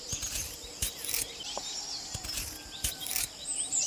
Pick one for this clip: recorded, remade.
recorded